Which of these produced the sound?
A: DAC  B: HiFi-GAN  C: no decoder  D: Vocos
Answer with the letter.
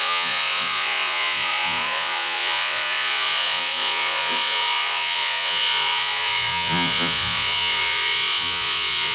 D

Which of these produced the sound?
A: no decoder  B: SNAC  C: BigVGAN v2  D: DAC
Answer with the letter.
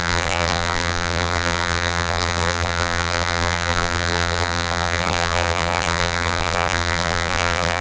C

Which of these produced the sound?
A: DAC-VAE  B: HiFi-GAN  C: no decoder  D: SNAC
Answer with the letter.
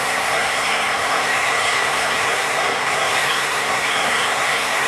D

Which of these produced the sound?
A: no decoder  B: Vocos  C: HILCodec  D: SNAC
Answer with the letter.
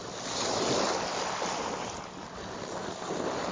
A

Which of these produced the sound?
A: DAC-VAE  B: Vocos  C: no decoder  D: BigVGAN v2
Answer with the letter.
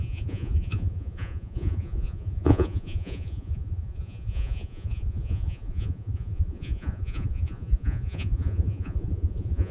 B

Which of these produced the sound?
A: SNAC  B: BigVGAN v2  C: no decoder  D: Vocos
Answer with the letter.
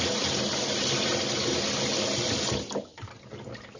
C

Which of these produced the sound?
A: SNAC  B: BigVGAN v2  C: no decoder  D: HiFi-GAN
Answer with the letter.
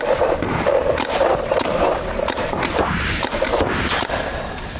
B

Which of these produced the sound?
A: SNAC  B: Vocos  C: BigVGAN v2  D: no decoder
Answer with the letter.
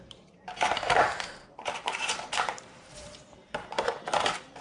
C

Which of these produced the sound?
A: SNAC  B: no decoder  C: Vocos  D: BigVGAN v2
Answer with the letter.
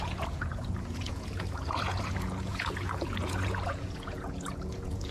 C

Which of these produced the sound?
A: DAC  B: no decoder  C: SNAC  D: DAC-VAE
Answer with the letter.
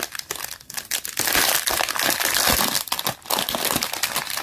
B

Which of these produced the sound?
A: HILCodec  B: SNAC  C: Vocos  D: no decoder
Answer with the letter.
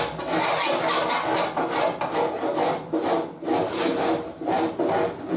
D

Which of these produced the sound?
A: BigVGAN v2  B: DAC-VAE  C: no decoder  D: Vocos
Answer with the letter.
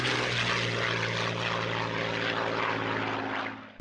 C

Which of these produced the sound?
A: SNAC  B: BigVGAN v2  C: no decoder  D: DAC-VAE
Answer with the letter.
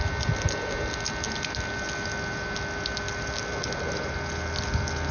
C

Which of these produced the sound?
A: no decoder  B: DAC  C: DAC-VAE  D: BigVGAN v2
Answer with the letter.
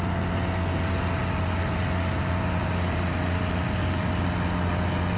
A